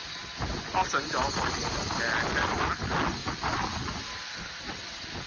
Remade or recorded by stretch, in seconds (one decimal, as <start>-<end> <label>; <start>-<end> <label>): 0.0-5.3 recorded